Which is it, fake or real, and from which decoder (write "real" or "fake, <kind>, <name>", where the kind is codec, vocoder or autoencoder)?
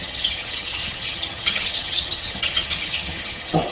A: fake, vocoder, HiFi-GAN